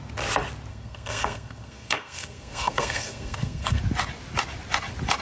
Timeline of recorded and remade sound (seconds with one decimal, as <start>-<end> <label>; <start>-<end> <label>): 0.0-0.7 recorded; 0.7-3.8 remade; 3.8-5.2 recorded